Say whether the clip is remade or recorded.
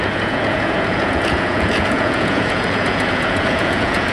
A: remade